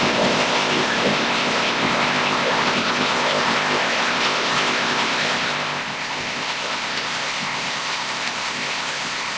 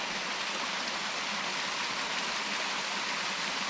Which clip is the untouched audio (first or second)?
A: second